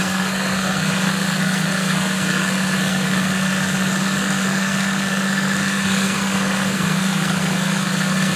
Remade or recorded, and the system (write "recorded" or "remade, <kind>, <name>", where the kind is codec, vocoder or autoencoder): remade, codec, SNAC